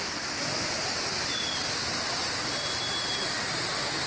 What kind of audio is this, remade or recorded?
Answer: recorded